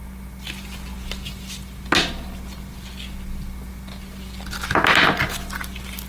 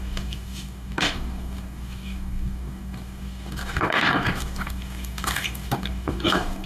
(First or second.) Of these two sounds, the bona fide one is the first